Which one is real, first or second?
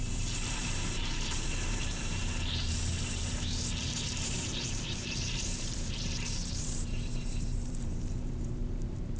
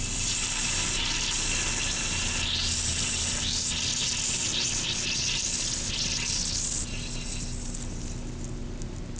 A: second